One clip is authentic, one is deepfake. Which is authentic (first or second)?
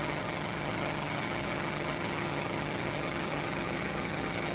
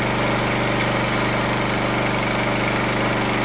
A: second